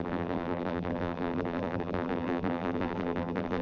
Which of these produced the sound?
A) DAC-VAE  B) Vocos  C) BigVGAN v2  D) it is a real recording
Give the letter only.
C